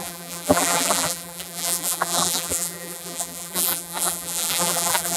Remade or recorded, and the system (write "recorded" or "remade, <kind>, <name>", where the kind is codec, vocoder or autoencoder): remade, vocoder, BigVGAN v2